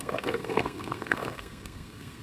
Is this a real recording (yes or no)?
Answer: no